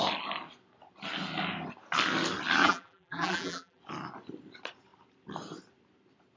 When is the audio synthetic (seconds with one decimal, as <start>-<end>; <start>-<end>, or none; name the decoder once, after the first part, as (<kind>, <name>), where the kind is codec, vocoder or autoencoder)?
2.6-3.8 (vocoder, BigVGAN v2)